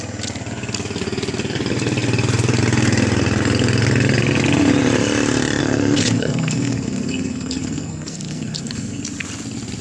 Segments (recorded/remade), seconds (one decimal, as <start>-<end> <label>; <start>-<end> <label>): 0.0-5.6 recorded; 5.6-9.0 remade; 9.0-9.8 recorded